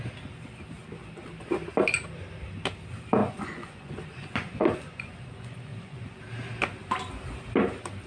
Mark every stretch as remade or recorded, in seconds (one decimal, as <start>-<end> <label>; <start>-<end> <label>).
0.0-3.2 recorded; 3.2-6.2 remade; 6.2-8.1 recorded